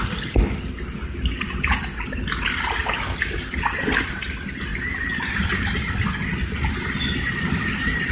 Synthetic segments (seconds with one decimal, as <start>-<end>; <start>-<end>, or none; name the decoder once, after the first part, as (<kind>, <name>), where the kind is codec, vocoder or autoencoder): none